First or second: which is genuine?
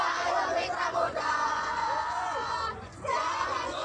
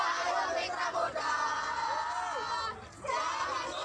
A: second